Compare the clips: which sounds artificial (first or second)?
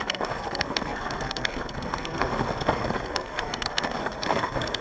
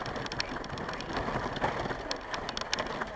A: first